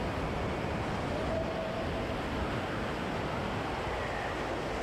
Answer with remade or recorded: recorded